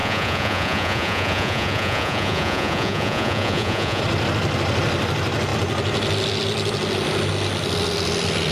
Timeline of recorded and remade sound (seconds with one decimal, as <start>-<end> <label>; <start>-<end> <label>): 0.0-4.0 remade; 4.0-8.5 recorded